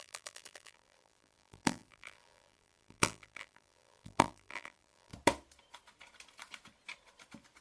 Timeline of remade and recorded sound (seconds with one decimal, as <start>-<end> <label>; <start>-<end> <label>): 0.0-5.1 remade; 5.1-7.6 recorded

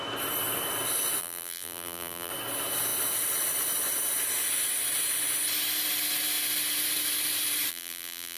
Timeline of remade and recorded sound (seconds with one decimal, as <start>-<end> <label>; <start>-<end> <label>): 0.0-1.2 recorded; 1.2-2.3 remade; 2.3-7.7 recorded; 7.7-8.4 remade